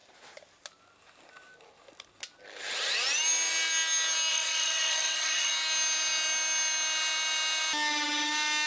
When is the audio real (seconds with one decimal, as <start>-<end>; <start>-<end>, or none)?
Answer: 0.0-4.3; 5.5-8.7